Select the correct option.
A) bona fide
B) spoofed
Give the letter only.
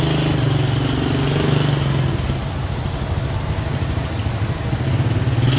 A